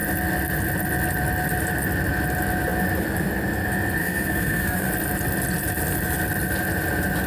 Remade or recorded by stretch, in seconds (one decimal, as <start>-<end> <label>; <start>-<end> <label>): 0.0-4.0 recorded; 4.0-4.9 remade; 4.9-7.3 recorded